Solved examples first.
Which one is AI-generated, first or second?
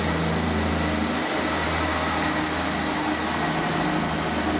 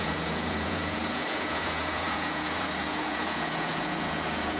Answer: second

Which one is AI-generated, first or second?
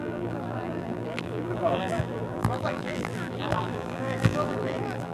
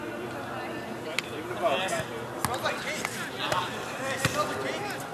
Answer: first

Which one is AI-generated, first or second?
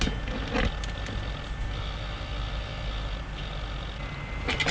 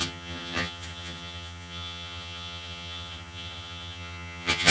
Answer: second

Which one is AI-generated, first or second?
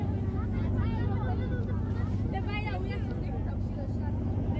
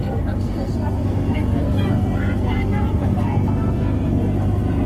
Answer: second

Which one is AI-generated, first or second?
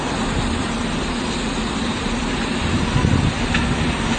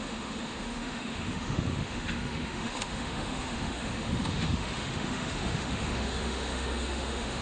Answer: second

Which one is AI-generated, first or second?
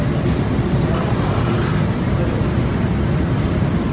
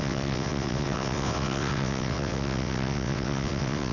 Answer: second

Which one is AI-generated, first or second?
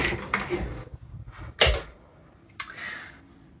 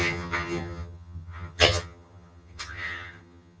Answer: second